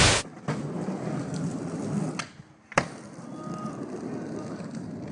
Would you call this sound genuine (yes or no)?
yes